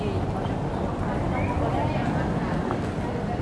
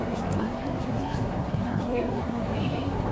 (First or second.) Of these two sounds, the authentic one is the first